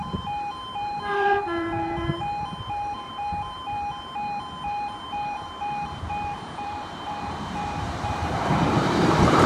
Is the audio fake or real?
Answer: fake